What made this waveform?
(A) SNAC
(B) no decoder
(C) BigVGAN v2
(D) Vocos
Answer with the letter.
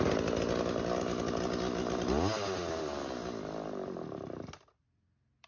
B